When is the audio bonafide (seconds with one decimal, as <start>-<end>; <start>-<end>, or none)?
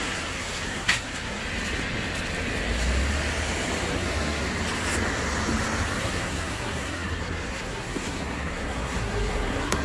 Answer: 1.4-3.9; 4.4-6.0